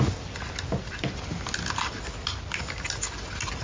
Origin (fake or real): real